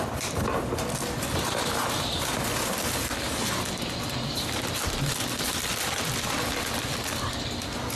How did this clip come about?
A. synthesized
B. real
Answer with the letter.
A